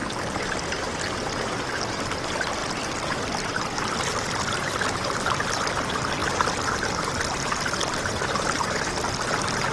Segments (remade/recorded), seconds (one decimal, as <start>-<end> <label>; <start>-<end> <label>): 0.0-9.7 recorded

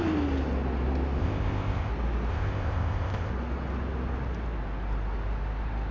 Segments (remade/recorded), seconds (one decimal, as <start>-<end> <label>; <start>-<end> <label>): 0.0-1.2 recorded; 1.2-1.9 remade; 1.9-2.3 recorded; 2.3-3.3 remade; 3.3-5.9 recorded

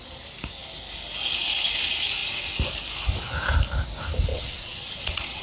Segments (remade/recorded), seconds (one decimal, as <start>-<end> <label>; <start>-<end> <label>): 0.0-4.3 recorded; 4.3-5.4 remade

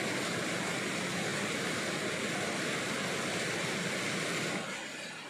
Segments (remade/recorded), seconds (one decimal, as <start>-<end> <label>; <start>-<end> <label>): 0.0-1.3 recorded; 1.3-4.5 remade; 4.5-5.3 recorded

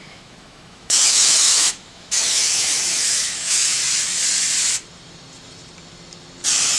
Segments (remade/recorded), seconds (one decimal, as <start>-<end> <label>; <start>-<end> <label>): 0.0-3.8 remade; 3.8-6.8 recorded

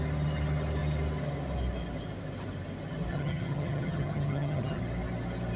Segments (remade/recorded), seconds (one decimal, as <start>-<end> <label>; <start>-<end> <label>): 0.0-3.1 recorded; 3.1-4.8 remade; 4.8-5.6 recorded

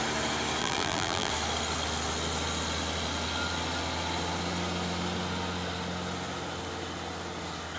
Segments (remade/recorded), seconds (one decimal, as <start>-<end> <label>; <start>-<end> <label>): 0.0-0.6 recorded; 0.6-1.3 remade; 1.3-7.8 recorded

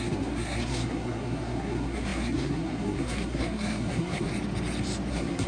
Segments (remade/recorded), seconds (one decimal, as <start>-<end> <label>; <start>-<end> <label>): 0.0-4.3 remade; 4.3-5.1 recorded; 5.1-5.5 remade